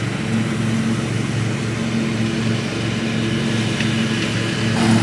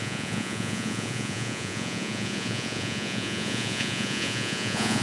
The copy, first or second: second